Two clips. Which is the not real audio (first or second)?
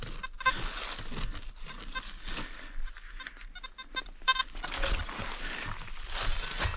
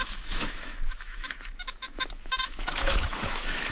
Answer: second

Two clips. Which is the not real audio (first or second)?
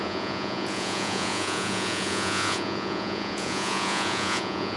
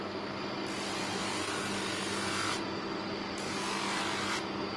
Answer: first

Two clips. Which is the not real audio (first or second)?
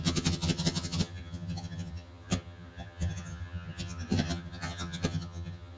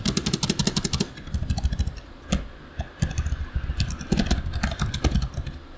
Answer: first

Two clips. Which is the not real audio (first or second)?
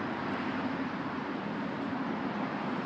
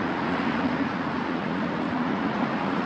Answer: second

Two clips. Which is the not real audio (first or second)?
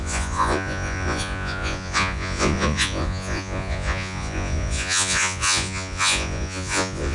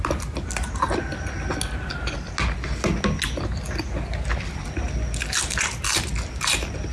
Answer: first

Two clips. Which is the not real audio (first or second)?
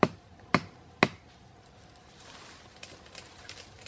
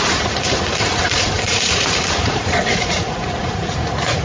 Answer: second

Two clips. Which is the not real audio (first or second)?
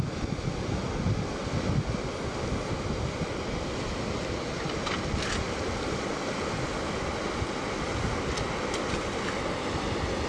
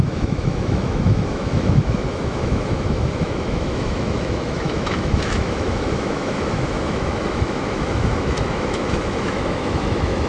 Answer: second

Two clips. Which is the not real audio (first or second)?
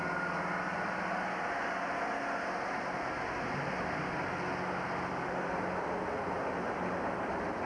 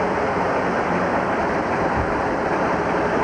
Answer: second